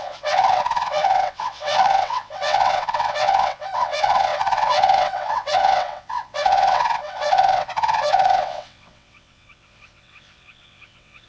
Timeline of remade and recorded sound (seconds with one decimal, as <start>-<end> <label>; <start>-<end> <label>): 0.0-11.3 remade